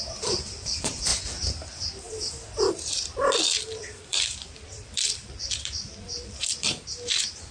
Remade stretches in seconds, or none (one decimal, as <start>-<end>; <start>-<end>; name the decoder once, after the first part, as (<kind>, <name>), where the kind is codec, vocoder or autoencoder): 0.0-1.1 (vocoder, BigVGAN v2); 2.7-7.5